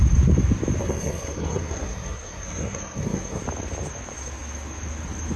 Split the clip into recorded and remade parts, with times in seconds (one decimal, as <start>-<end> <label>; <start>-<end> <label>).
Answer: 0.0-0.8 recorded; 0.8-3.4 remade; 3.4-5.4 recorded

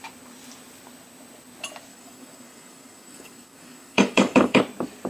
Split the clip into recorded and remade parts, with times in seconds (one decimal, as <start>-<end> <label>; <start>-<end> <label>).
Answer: 0.0-1.9 recorded; 1.9-4.6 remade; 4.6-5.1 recorded

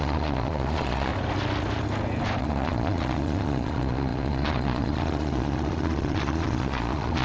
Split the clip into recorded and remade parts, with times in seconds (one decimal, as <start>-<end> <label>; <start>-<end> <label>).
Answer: 0.0-1.1 remade; 1.1-2.4 recorded; 2.4-7.2 remade